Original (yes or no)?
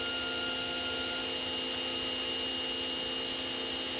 yes